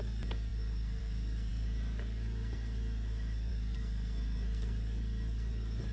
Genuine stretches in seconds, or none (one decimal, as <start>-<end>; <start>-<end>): none